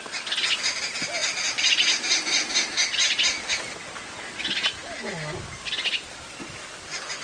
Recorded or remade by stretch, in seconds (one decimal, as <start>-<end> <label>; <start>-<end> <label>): 0.0-7.2 recorded